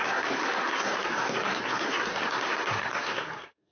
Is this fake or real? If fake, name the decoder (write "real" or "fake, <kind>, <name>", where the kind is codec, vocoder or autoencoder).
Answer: fake, codec, SNAC